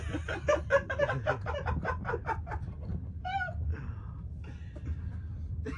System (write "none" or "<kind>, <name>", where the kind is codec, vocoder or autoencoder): none